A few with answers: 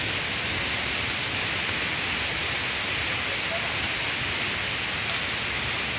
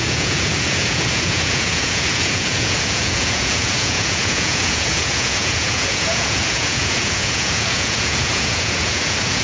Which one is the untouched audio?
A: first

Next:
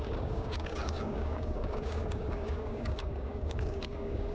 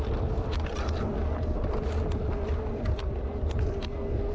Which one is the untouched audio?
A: second